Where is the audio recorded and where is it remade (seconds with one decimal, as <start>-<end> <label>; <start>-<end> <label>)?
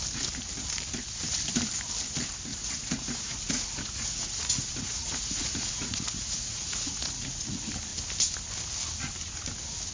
0.0-2.5 recorded; 2.5-7.4 remade; 7.4-9.9 recorded